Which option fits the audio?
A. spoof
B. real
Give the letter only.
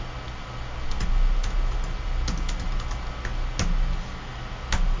B